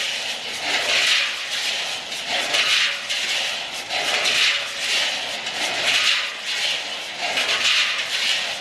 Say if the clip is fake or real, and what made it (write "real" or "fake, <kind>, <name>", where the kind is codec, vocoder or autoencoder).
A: real